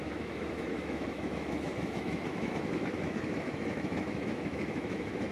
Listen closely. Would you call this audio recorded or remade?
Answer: remade